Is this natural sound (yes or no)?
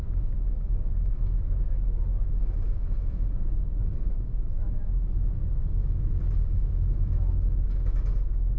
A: no